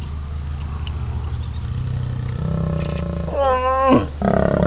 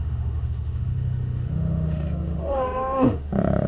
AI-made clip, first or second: second